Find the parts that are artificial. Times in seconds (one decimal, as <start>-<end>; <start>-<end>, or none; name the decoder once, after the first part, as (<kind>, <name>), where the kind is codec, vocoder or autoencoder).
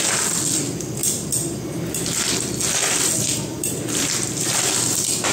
none